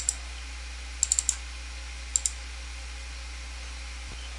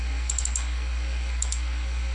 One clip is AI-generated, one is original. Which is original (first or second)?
first